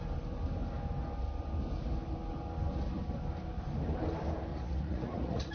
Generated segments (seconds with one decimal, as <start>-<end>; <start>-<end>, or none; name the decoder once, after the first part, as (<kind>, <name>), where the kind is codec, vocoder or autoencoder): 4.5-5.5 (vocoder, Vocos)